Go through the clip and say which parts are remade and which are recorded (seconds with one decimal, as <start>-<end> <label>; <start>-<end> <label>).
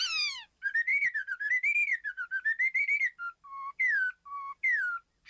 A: 0.0-5.3 recorded